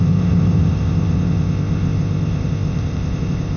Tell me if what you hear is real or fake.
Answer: fake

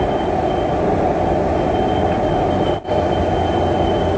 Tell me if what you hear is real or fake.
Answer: real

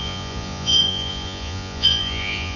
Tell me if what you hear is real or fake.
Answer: fake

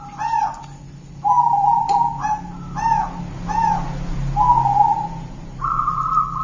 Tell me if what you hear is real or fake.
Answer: real